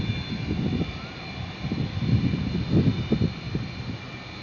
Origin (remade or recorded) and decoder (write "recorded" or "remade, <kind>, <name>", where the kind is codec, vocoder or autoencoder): recorded